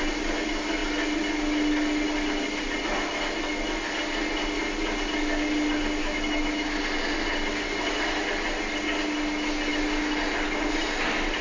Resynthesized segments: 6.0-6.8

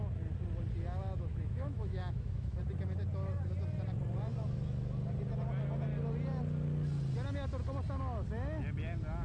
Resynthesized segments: 1.3-2.6

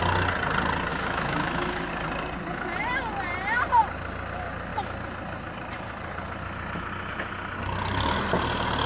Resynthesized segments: 0.9-1.9

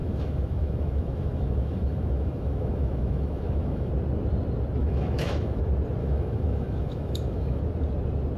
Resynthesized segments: 0.0-3.9; 4.8-5.6; 6.0-7.6

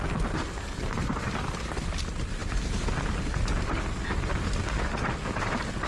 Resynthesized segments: none

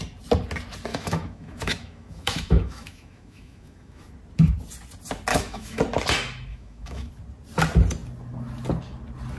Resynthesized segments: 0.9-4.1; 5.3-5.8; 6.5-7.1

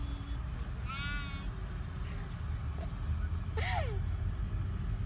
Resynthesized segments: none